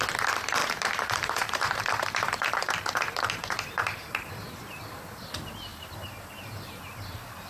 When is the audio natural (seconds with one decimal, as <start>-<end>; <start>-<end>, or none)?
0.0-0.6; 4.8-5.7; 6.7-7.5